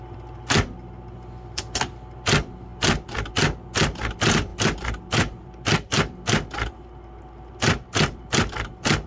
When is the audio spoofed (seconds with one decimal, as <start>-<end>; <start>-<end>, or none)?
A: none